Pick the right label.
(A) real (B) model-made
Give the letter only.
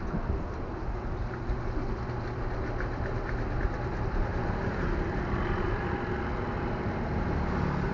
A